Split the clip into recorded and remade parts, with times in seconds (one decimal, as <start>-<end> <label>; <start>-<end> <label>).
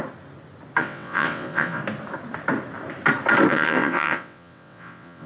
0.0-0.8 recorded; 0.8-1.8 remade; 1.8-3.5 recorded; 3.5-5.3 remade